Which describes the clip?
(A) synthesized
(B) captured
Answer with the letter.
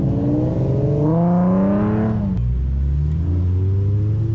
B